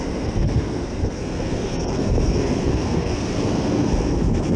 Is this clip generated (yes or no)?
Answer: yes